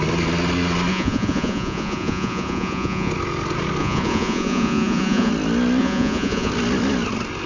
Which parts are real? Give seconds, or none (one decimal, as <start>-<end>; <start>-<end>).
0.0-0.9; 3.1-3.8; 5.3-5.8; 6.5-7.5